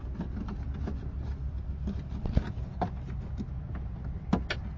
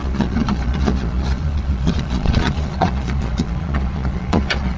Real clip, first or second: first